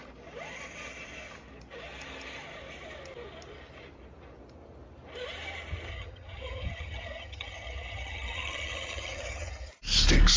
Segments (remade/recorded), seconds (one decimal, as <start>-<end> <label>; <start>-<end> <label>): 0.0-5.9 recorded; 5.9-9.7 remade; 9.7-10.4 recorded